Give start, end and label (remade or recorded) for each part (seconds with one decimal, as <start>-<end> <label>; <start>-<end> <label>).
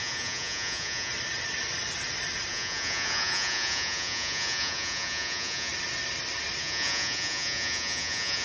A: 0.0-1.1 remade; 1.1-2.5 recorded; 2.5-5.7 remade; 5.7-6.6 recorded; 6.6-8.4 remade